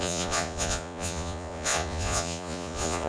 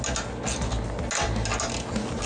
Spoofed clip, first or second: first